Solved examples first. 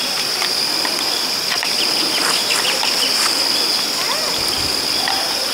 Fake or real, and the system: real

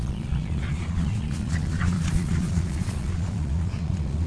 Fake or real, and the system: fake, vocoder, Vocos